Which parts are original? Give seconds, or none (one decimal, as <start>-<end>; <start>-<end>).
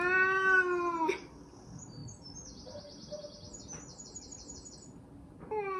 0.0-5.8